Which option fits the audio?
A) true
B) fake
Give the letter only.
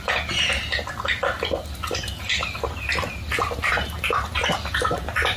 A